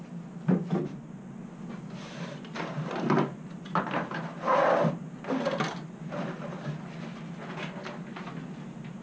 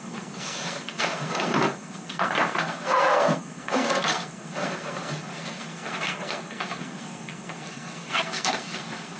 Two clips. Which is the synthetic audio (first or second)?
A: second